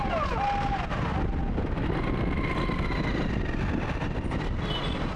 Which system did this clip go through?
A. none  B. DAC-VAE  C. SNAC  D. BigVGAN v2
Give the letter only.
A